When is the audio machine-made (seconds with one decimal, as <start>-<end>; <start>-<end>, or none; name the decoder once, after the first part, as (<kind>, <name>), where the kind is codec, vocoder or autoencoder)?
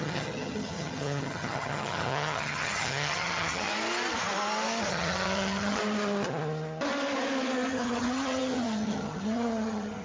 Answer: 0.0-3.7 (vocoder, HiFi-GAN); 4.9-5.8; 7.7-10.0